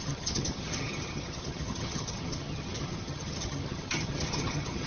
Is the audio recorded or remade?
remade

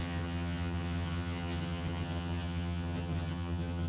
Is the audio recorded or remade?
remade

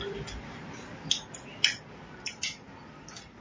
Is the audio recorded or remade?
recorded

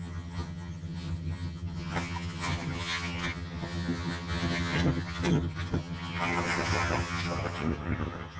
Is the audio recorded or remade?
remade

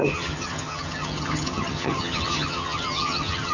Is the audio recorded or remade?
remade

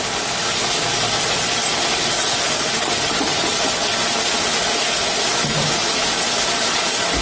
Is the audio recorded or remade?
recorded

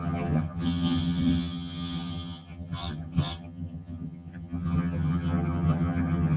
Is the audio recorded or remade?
remade